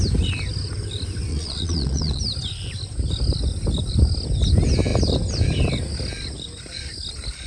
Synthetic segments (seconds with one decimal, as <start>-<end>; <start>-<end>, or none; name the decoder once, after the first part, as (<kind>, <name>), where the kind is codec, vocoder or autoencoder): 1.3-2.2 (vocoder, Vocos)